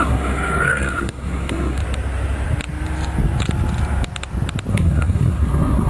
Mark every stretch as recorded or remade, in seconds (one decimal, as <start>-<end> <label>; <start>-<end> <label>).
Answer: 0.0-1.8 remade; 1.8-4.7 recorded; 4.7-5.9 remade

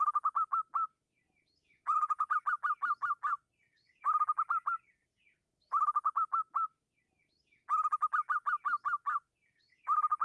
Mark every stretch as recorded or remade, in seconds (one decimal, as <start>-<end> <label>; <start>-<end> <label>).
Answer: 0.0-1.6 recorded; 1.6-2.3 remade; 2.3-10.2 recorded

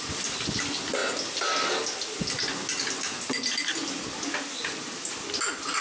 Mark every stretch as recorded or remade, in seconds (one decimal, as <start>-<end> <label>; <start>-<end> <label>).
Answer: 0.0-5.8 recorded

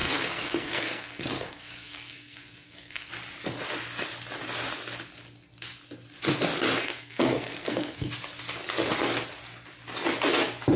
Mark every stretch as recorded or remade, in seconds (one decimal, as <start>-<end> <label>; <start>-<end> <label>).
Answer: 0.0-3.1 remade; 3.1-6.8 recorded; 6.8-8.1 remade; 8.1-10.8 recorded

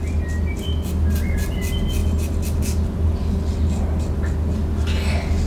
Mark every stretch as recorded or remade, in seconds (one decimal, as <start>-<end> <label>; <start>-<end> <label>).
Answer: 0.0-5.5 recorded

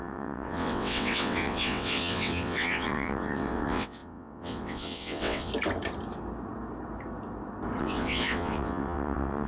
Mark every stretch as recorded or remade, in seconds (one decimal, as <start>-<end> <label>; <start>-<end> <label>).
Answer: 0.0-5.5 remade; 5.5-7.8 recorded; 7.8-9.5 remade